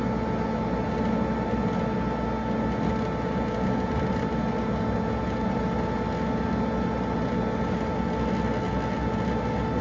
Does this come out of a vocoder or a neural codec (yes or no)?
no